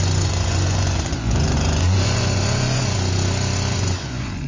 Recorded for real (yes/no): no